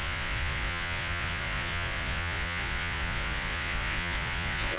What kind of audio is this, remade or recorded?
remade